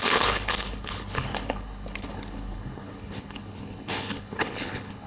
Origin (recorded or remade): remade